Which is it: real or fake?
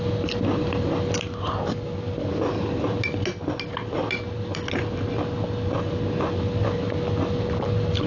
real